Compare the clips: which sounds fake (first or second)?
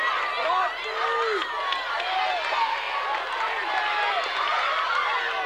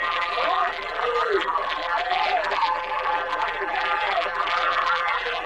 second